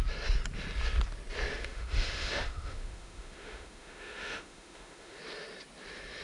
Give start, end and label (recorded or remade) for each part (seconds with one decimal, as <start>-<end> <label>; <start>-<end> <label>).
0.0-1.5 recorded; 1.5-5.2 remade; 5.2-6.2 recorded